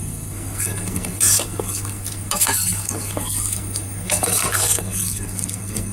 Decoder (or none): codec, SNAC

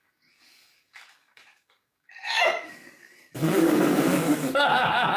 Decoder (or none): codec, DAC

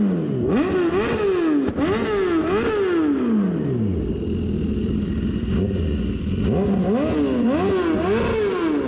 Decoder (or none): none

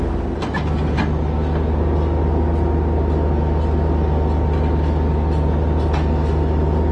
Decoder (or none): none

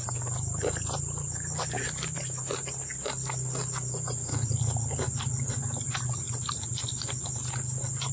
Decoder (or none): none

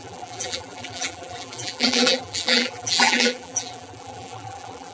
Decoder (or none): vocoder, BigVGAN v2